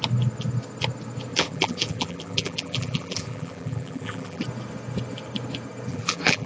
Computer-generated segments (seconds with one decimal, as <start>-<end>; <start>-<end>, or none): 1.3-4.4; 5.9-6.5